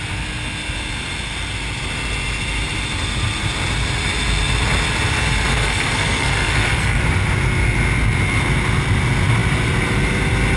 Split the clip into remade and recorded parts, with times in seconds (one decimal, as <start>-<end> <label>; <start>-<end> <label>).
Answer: 0.0-5.5 recorded; 5.5-7.0 remade; 7.0-10.6 recorded